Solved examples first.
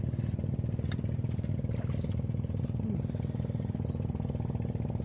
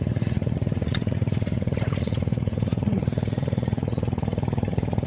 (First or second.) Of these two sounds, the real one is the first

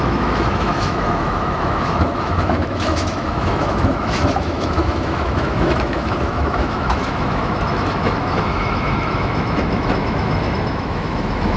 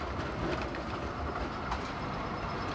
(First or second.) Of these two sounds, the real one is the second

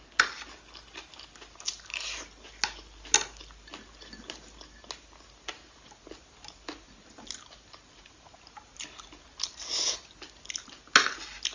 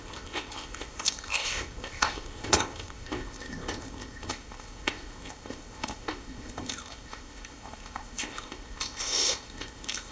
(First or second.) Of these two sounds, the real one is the first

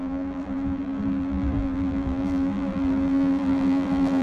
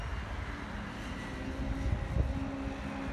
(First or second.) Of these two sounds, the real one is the second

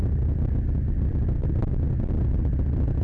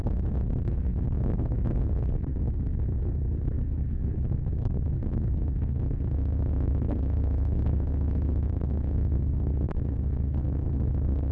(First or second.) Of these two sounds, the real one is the first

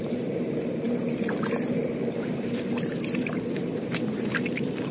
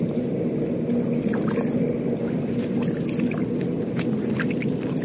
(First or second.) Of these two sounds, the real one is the second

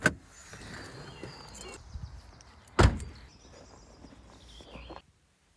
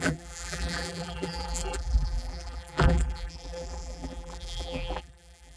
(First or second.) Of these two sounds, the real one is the first